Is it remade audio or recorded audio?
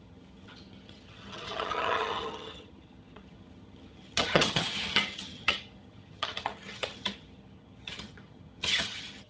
remade